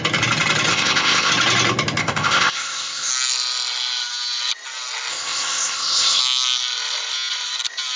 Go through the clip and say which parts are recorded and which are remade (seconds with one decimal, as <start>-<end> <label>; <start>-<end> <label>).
0.0-0.7 recorded; 0.7-1.3 remade; 1.3-2.0 recorded; 2.0-3.1 remade; 3.1-5.1 recorded; 5.1-6.2 remade; 6.2-8.0 recorded